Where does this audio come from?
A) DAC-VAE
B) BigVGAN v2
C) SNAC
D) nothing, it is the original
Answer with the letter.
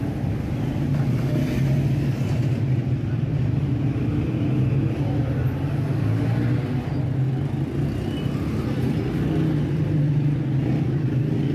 D